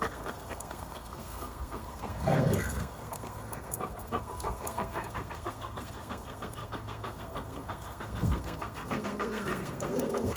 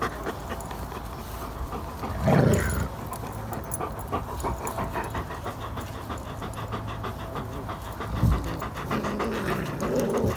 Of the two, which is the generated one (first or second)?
first